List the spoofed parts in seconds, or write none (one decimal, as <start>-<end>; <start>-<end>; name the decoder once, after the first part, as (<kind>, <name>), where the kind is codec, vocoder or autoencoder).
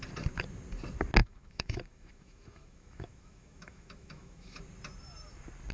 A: 1.2-4.6 (autoencoder, DAC-VAE)